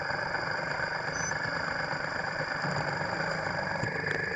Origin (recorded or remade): recorded